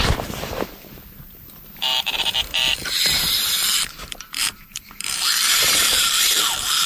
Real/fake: fake